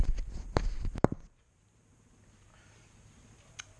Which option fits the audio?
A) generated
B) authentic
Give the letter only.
B